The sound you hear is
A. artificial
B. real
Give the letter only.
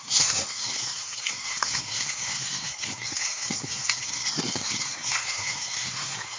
A